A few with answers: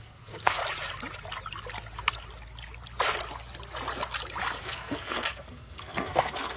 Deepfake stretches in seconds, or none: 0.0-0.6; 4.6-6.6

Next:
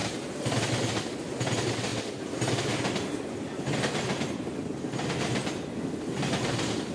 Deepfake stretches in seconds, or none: none

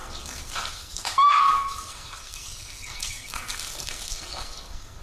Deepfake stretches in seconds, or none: 0.0-5.0

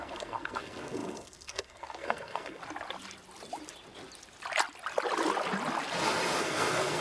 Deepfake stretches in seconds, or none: 0.0-2.6; 6.4-7.0

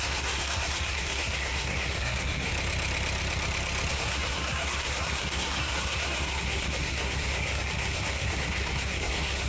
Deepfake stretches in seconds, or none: 0.0-2.5; 3.9-9.5

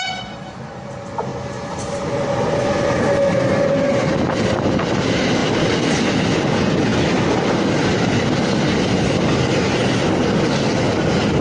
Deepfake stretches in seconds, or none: none

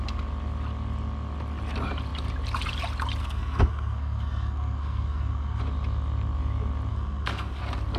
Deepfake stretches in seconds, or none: 3.2-5.6; 6.9-7.6